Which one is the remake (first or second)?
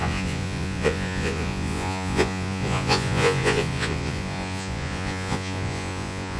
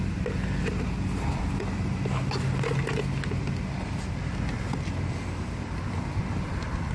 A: first